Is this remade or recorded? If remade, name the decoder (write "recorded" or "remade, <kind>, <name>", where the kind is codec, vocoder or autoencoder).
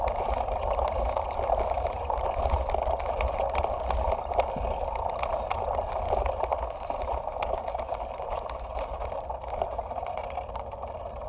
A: recorded